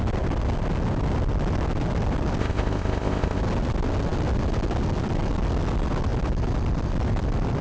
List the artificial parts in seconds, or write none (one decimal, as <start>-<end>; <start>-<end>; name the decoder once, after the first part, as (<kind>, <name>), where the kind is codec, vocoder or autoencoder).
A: 2.4-3.4 (codec, ZipCodec)

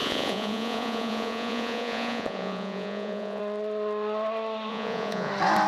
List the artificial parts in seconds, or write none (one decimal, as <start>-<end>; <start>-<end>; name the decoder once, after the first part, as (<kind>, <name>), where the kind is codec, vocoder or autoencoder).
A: 0.0-3.4 (vocoder, Vocos); 4.7-5.3

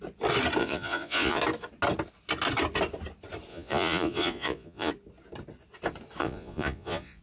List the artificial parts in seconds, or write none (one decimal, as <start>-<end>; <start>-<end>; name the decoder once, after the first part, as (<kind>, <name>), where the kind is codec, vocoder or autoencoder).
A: 0.6-1.4 (vocoder, Vocos); 3.5-4.9; 6.2-7.2

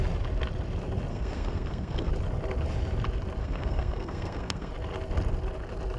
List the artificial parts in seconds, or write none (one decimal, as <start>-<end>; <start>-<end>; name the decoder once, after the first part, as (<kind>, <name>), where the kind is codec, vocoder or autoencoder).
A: 1.1-2.1 (codec, SNAC); 3.4-4.7

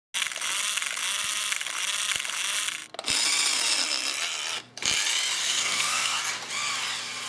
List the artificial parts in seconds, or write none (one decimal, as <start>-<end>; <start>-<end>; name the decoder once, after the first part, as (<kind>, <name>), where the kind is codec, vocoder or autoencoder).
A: 5.4-6.2 (codec, SNAC)